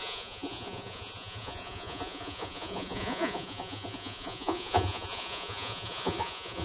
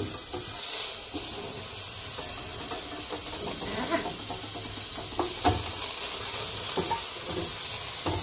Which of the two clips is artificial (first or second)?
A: first